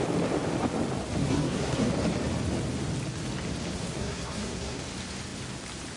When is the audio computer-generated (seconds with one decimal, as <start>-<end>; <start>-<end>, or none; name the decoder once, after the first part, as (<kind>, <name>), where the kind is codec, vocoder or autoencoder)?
1.2-1.9 (codec, SNAC); 3.8-4.8